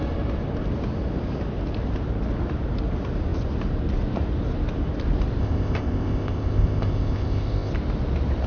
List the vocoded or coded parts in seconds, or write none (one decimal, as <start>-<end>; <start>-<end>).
5.4-7.7